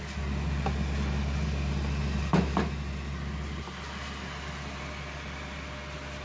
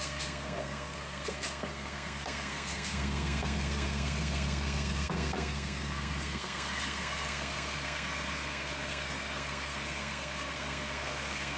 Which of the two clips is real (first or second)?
first